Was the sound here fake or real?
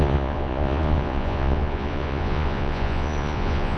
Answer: fake